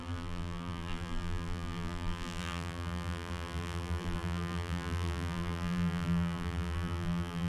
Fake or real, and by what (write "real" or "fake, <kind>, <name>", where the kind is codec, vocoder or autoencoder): fake, vocoder, BigVGAN v2